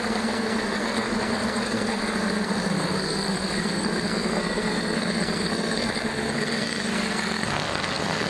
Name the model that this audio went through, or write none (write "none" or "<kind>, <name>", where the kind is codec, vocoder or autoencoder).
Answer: codec, SNAC